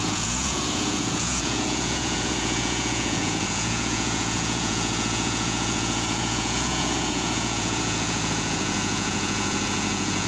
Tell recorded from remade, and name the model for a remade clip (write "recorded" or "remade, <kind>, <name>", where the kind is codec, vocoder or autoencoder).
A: remade, vocoder, Vocos